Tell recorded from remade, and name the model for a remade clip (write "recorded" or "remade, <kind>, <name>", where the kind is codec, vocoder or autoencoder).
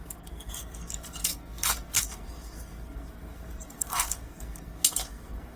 remade, codec, SNAC